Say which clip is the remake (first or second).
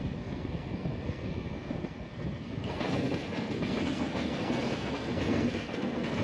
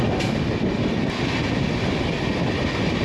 first